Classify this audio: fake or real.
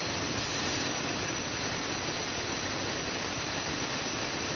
real